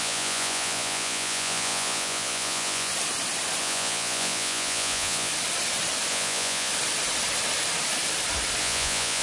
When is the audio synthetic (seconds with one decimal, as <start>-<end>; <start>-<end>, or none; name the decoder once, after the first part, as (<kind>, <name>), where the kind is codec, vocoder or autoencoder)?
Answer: 0.0-2.9 (vocoder, Vocos); 3.6-5.3; 6.1-6.7; 8.6-9.2